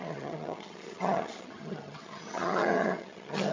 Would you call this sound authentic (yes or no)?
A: no